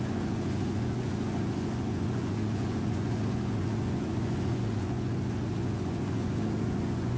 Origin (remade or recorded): remade